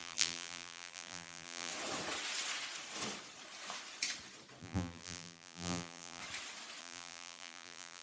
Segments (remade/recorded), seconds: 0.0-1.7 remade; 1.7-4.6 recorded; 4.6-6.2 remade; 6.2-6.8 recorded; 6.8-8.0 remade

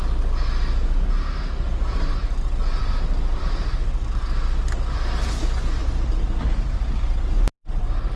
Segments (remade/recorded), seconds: 0.0-2.8 recorded; 2.8-3.4 remade; 3.4-5.8 recorded; 5.8-6.3 remade; 6.3-8.2 recorded

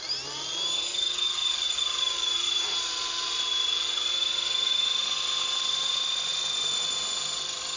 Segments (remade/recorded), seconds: 0.0-1.4 recorded; 1.4-4.7 remade; 4.7-7.8 recorded

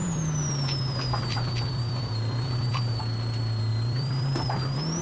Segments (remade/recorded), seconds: 0.0-3.0 remade; 3.0-3.7 recorded; 3.7-5.0 remade